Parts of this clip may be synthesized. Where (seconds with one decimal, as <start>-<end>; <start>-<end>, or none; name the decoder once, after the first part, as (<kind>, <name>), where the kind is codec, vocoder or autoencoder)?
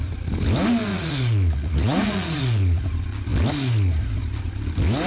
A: 0.9-2.8 (vocoder, Vocos)